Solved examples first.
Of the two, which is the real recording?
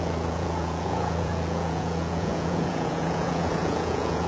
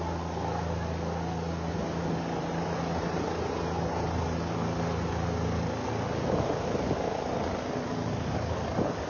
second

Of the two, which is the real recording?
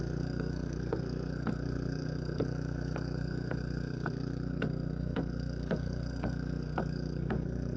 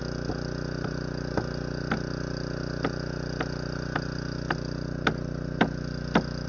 second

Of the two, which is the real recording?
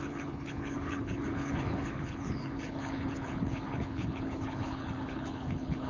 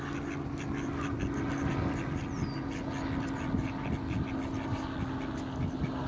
second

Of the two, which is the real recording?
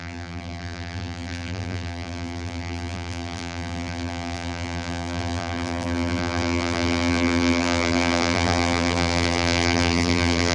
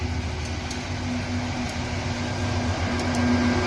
second